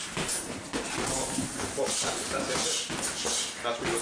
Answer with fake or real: real